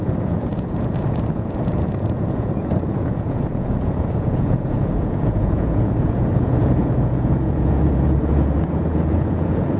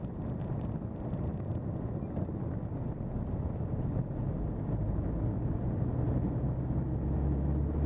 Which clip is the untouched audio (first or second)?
second